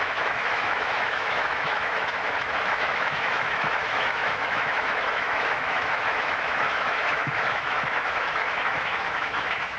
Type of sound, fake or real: fake